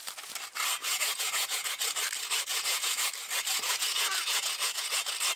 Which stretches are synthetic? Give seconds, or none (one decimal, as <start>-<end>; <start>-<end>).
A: 0.8-1.7; 2.5-3.1; 3.5-4.9